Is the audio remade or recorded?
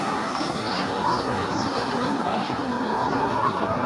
remade